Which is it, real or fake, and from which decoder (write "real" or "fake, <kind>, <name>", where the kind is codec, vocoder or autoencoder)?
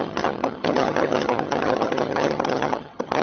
fake, vocoder, HiFi-GAN